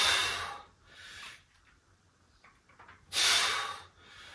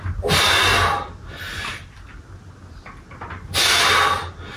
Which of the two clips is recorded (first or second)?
second